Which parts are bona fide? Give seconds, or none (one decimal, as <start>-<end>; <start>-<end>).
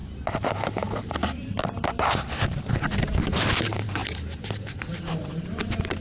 none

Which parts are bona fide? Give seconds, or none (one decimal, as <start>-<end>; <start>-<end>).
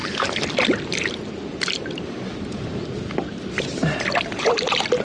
0.0-0.9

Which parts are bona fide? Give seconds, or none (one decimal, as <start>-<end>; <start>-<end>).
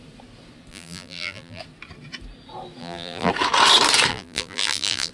0.0-0.7; 1.6-2.8; 3.3-4.1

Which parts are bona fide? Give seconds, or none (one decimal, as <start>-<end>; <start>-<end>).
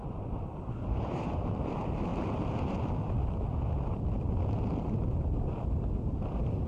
0.0-0.8; 2.1-6.1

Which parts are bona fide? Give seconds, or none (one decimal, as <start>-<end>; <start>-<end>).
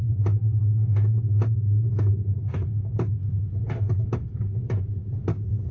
0.4-2.1; 5.0-5.7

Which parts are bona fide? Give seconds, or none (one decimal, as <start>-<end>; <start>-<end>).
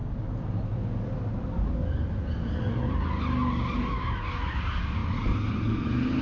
0.0-6.2